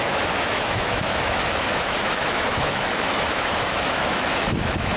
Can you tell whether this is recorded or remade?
remade